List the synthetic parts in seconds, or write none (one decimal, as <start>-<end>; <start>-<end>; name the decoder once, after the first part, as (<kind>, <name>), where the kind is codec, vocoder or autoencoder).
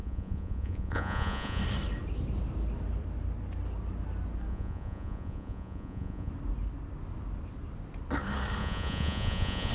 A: 0.0-1.6 (vocoder, Vocos); 4.5-6.3; 8.6-9.7